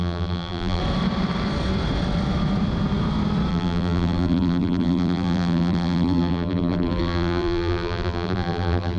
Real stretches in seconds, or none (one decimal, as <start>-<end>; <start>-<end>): 0.8-3.5